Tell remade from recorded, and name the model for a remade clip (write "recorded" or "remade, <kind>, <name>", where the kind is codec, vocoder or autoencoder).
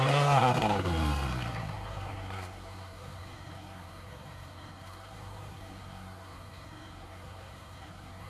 remade, codec, SNAC